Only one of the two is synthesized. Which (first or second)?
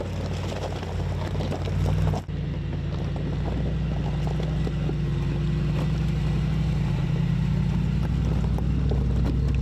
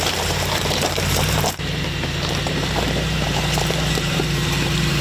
second